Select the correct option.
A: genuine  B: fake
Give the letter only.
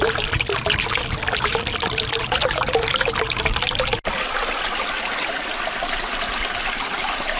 A